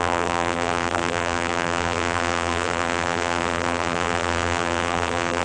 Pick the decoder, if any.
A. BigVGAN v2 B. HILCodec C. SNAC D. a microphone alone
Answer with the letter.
A